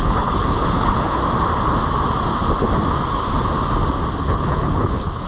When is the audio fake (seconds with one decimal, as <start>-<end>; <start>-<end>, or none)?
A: 0.0-1.2; 4.2-5.3